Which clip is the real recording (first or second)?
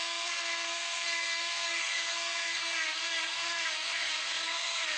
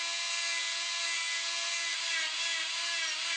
second